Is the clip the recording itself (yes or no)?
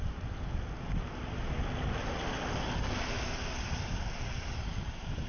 yes